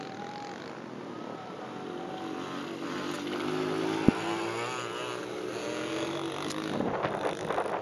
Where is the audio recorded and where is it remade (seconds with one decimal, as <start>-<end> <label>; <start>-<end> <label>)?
0.0-7.8 recorded